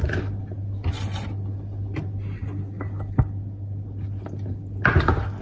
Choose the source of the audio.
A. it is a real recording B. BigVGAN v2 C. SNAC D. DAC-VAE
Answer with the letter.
A